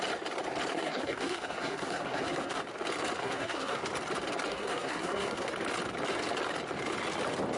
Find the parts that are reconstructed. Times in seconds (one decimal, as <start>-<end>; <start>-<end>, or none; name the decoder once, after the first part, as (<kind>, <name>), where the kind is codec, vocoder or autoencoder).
0.7-2.6 (codec, SNAC); 3.2-3.8; 4.5-5.5